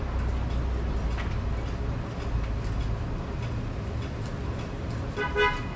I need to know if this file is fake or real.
real